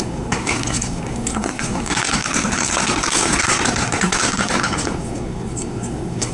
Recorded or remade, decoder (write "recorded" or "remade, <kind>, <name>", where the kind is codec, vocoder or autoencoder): remade, codec, SNAC